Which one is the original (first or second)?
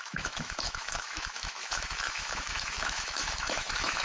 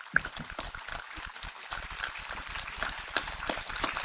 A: second